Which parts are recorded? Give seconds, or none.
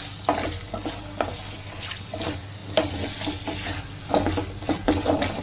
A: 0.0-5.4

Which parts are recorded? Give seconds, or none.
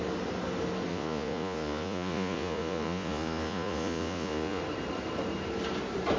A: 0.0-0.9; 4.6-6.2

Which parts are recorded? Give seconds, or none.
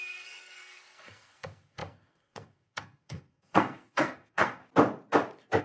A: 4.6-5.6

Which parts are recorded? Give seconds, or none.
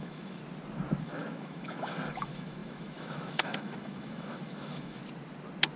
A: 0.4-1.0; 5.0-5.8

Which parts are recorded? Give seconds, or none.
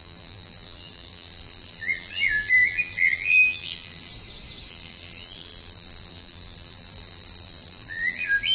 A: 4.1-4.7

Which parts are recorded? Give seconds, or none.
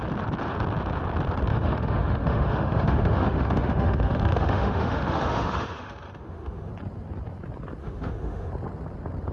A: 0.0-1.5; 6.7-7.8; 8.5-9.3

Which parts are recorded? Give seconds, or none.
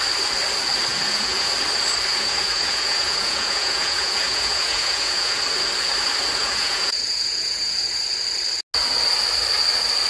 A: 0.0-0.9; 1.5-2.1; 5.4-6.4; 8.0-10.1